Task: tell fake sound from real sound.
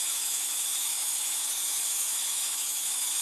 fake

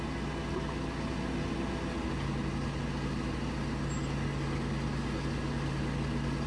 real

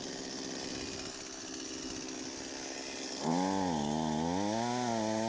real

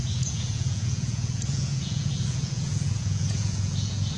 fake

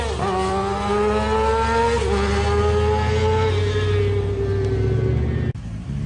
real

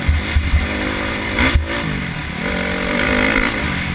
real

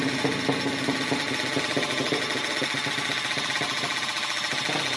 real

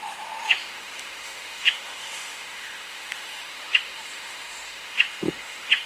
fake